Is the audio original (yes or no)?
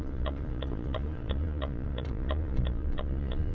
no